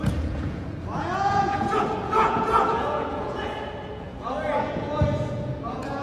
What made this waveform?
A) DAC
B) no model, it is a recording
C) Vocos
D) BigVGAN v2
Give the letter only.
C